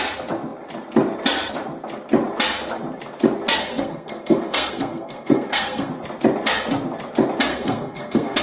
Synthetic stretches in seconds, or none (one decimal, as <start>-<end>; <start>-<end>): 3.6-5.9; 7.5-8.4